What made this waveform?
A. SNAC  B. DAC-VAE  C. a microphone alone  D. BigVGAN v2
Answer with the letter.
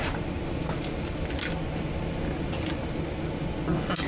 C